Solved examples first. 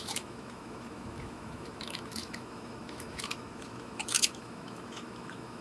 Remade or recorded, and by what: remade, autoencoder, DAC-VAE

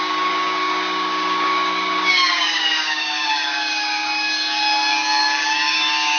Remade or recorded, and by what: remade, codec, DAC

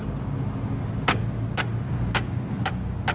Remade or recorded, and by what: recorded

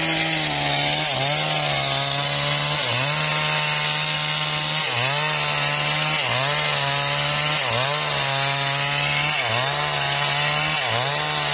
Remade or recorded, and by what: recorded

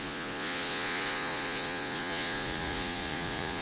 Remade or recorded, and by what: remade, vocoder, Vocos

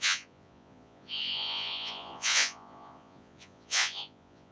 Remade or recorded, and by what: remade, vocoder, Vocos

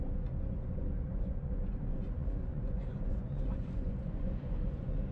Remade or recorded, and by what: remade, vocoder, Vocos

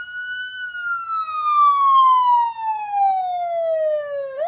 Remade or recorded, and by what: recorded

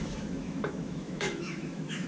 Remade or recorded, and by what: remade, autoencoder, DAC-VAE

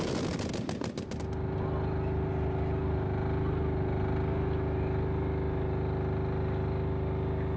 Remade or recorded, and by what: recorded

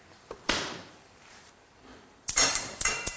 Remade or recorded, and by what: remade, vocoder, BigVGAN v2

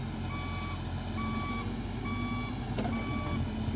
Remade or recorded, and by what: recorded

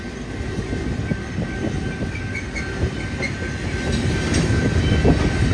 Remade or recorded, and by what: recorded